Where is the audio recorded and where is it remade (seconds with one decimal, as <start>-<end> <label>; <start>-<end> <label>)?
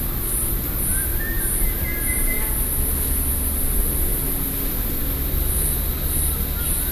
0.0-6.9 recorded